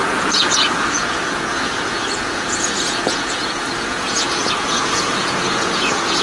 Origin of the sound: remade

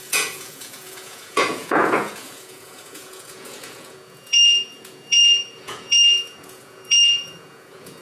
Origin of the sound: remade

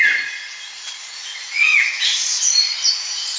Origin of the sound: remade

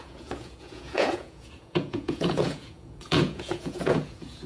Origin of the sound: remade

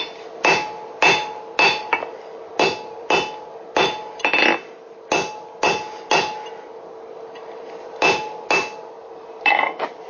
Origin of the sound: recorded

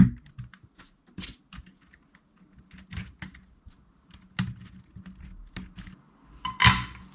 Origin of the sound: recorded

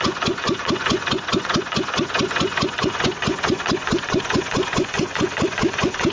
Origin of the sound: remade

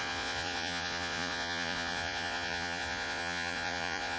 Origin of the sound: remade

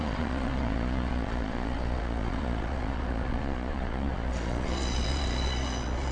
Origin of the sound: remade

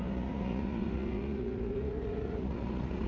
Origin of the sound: remade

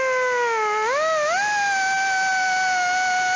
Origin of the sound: recorded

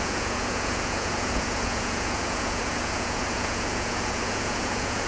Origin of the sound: remade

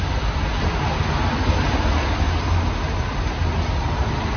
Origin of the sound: recorded